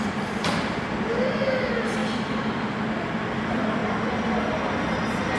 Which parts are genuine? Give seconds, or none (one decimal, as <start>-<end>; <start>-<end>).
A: 0.0-5.4